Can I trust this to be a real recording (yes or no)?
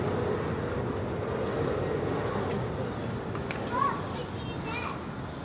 yes